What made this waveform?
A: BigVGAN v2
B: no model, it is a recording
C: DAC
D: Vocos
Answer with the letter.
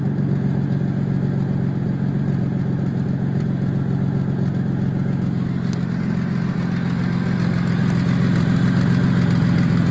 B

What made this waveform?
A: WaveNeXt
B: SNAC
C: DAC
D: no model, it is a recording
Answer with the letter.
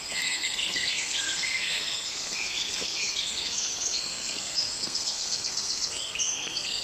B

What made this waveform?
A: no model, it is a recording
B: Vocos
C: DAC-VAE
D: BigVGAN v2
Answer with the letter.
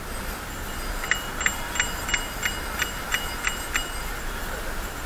A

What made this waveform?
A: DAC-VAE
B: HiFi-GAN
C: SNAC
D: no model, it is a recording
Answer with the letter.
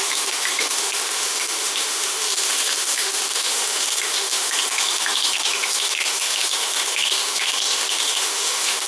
A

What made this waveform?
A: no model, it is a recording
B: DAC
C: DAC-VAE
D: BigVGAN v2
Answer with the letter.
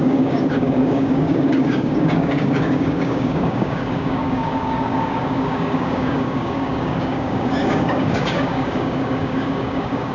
B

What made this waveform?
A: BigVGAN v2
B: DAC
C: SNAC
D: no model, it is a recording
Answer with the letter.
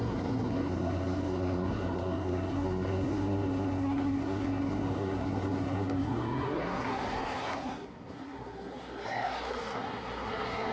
C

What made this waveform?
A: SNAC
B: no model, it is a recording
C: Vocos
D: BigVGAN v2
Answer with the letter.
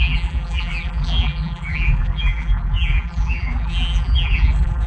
D